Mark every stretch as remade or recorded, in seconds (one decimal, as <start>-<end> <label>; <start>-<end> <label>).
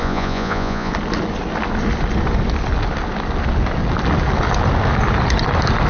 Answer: 0.0-0.9 remade; 0.9-5.9 recorded